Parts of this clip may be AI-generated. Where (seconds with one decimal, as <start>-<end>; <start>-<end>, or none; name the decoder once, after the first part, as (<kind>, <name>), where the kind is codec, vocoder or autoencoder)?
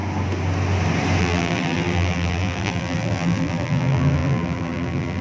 1.2-5.2 (vocoder, BigVGAN v2)